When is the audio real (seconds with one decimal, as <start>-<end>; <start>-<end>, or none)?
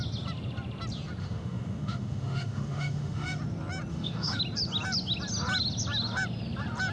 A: 0.0-1.2; 3.4-3.9; 4.4-6.9